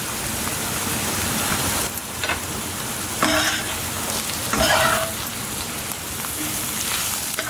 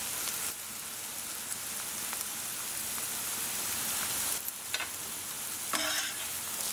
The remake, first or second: first